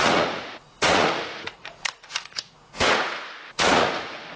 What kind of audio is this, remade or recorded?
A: remade